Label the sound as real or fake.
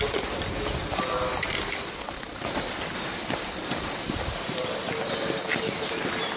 real